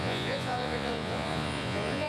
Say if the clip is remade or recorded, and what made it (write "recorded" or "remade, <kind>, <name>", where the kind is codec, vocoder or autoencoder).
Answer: remade, vocoder, Vocos